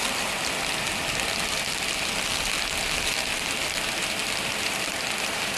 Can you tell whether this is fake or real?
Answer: real